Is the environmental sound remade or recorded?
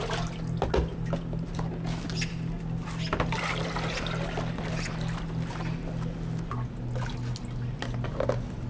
recorded